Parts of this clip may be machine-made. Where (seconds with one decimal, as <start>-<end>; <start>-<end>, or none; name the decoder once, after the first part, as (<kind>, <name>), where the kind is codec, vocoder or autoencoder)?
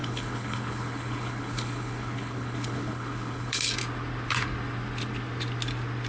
0.0-3.7 (codec, HILCodec)